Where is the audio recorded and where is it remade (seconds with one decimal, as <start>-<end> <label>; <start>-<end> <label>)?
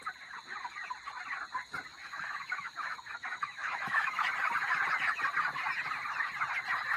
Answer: 0.0-1.9 recorded; 1.9-4.3 remade; 4.3-7.0 recorded